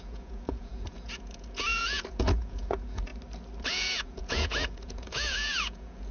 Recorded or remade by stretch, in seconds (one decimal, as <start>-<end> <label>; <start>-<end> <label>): 0.0-3.1 remade; 3.1-3.6 recorded; 3.6-6.1 remade